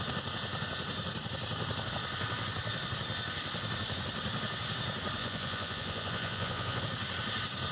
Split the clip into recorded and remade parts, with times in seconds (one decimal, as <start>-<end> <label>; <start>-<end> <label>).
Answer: 0.0-5.2 recorded; 5.2-6.8 remade; 6.8-7.7 recorded